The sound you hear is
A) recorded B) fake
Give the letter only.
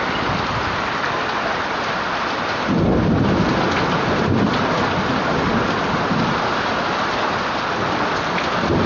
A